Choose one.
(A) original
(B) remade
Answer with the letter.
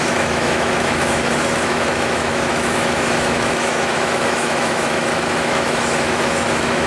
B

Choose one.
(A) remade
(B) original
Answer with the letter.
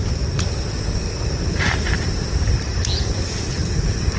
B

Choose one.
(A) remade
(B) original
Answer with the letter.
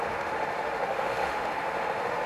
A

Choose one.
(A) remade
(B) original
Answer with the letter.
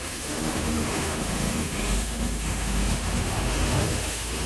A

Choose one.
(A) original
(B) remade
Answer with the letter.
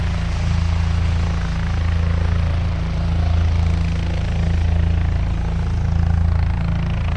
A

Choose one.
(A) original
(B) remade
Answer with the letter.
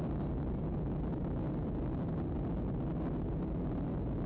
A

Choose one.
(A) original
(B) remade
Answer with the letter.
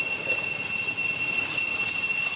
A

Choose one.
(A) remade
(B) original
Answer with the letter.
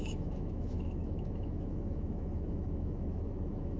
A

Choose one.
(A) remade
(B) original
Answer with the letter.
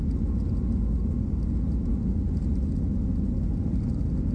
B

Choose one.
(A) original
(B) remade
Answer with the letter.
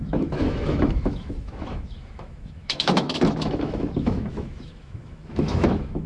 B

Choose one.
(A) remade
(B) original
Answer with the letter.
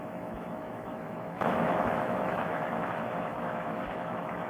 A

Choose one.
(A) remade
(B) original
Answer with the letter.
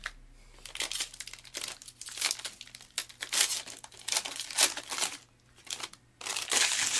B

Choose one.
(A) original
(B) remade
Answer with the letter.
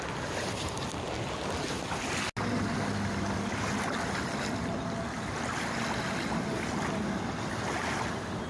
A